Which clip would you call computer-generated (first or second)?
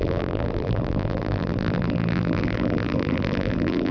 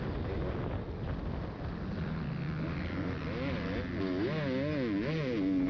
first